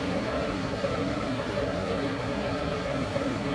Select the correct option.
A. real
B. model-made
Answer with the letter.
B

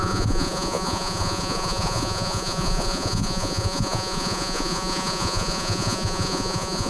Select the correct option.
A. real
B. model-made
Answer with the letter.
B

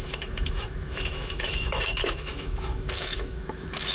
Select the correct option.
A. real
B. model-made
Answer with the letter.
B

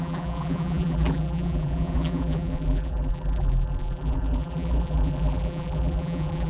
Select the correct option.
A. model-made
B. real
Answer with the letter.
A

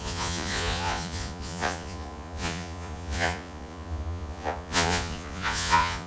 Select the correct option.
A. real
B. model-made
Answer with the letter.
B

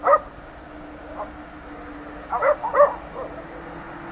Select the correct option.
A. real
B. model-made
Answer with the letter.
A